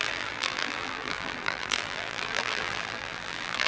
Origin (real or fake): fake